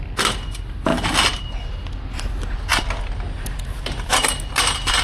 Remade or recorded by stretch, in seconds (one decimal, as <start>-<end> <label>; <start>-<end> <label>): 0.0-5.0 recorded